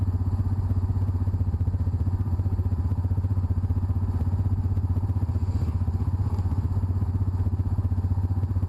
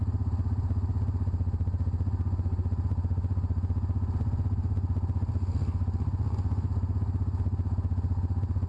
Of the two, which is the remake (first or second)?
first